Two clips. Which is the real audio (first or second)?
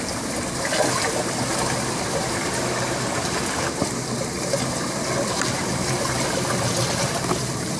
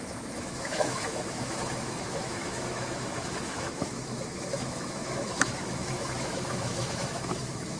first